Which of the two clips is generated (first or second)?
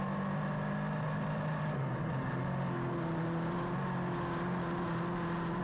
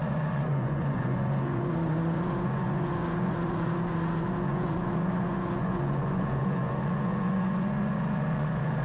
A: second